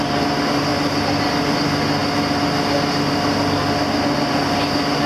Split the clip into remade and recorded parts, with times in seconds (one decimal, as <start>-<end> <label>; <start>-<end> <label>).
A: 0.0-5.1 recorded